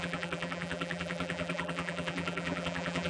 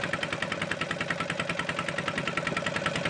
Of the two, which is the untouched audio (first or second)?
second